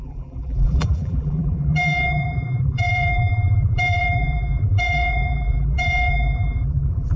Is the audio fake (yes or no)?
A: yes